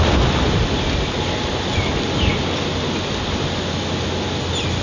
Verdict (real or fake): real